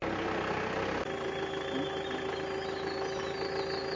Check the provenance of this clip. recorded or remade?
recorded